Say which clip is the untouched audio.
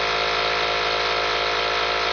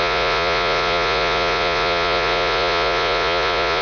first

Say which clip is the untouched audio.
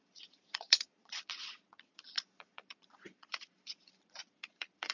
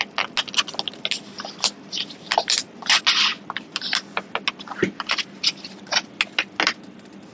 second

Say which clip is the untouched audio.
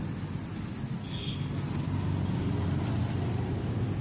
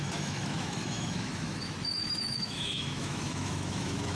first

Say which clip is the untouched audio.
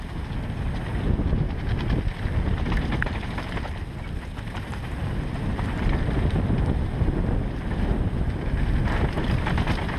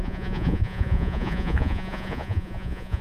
first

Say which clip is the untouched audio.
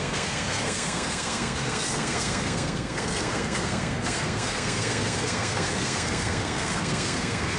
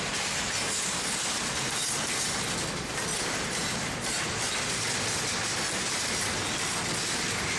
second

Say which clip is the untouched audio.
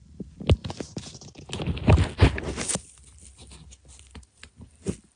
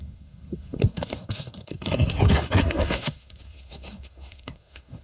first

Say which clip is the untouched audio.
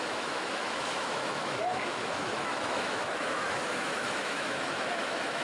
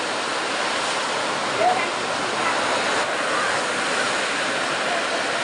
second